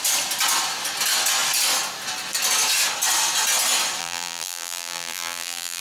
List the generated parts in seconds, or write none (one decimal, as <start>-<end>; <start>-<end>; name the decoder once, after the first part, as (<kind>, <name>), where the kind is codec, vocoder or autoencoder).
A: 4.0-5.8 (vocoder, BigVGAN v2)